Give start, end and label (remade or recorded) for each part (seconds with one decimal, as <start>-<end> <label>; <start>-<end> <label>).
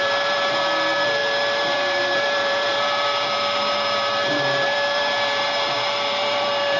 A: 0.0-6.8 remade